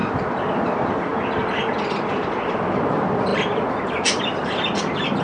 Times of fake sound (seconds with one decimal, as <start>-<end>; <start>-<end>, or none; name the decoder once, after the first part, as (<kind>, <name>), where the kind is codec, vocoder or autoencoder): 0.5-3.3 (vocoder, BigVGAN v2); 4.2-5.2